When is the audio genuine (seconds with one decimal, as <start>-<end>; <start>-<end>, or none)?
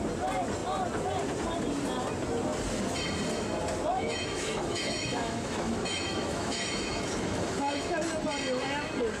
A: 0.0-3.9; 8.0-9.2